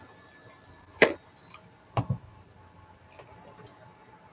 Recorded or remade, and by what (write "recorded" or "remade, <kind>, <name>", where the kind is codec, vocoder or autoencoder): recorded